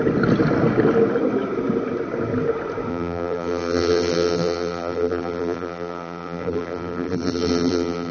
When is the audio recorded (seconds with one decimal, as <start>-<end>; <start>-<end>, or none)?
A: 0.0-2.9